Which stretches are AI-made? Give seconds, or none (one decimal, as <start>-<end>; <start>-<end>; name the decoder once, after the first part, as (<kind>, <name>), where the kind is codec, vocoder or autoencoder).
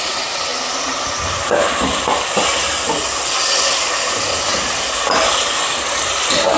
none